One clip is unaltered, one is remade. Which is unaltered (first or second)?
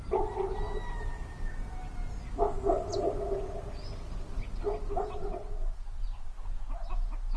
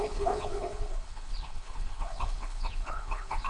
first